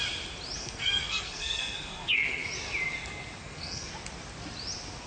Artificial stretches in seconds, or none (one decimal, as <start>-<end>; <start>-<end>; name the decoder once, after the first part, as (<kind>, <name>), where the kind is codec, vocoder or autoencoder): 0.6-2.5 (codec, SNAC); 3.4-3.9